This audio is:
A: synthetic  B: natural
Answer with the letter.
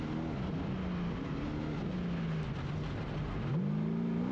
B